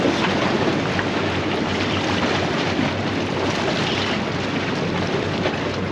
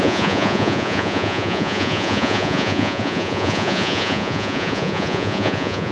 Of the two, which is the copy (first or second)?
second